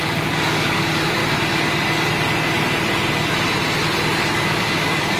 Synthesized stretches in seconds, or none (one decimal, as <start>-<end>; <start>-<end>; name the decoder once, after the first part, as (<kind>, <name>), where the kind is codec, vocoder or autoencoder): 0.0-1.2 (codec, DAC); 4.3-5.2